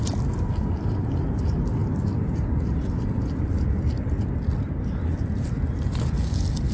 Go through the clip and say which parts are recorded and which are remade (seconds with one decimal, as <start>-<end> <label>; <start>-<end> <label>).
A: 0.0-6.7 recorded